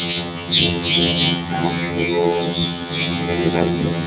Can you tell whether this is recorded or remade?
remade